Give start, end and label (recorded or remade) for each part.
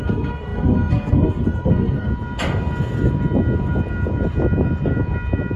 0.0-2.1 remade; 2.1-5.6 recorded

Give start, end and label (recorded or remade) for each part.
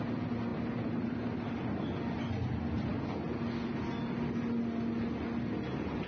0.0-6.1 recorded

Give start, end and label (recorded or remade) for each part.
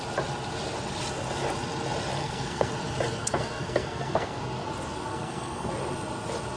0.0-2.2 recorded; 2.2-2.7 remade; 2.7-3.2 recorded; 3.2-4.4 remade; 4.4-5.1 recorded; 5.1-5.7 remade; 5.7-6.6 recorded